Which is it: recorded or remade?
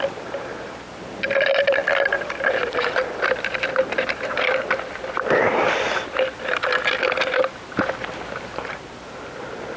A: remade